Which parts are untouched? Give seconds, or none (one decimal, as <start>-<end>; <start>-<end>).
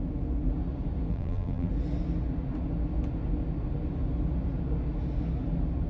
0.0-1.1; 1.7-5.9